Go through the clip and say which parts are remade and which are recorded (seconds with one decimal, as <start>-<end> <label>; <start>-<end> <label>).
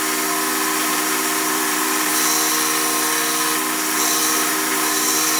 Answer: 0.0-0.8 recorded; 0.8-2.1 remade; 2.1-4.2 recorded; 4.2-5.4 remade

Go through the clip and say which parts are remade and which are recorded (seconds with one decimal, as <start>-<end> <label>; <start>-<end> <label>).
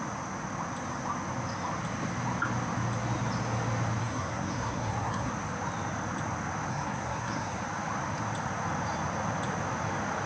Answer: 0.0-4.0 recorded; 4.0-5.3 remade; 5.3-6.7 recorded; 6.7-7.6 remade; 7.6-10.3 recorded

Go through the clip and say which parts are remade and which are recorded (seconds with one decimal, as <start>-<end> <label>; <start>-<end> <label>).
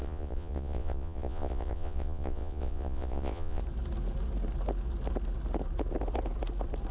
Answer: 0.0-3.6 remade; 3.6-6.9 recorded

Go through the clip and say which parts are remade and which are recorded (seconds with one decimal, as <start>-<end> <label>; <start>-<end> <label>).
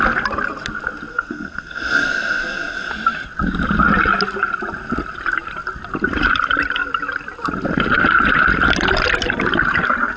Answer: 0.0-1.1 recorded; 1.1-2.9 remade; 2.9-10.2 recorded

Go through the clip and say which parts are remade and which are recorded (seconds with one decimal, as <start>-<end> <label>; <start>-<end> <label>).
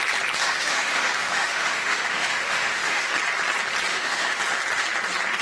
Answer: 0.0-0.4 recorded; 0.4-3.1 remade; 3.1-3.9 recorded; 3.9-4.4 remade; 4.4-5.4 recorded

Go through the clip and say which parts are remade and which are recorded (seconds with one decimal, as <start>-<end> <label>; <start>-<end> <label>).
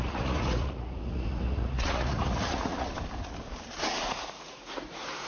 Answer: 0.0-2.9 remade; 2.9-3.9 recorded; 3.9-5.3 remade